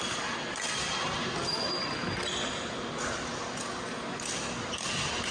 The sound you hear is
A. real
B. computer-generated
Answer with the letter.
A